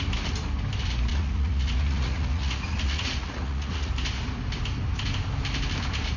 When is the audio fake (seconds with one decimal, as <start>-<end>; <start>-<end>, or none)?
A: 1.1-3.9